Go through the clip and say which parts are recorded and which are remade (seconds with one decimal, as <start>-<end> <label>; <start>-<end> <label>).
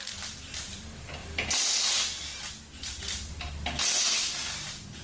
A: 0.0-5.0 recorded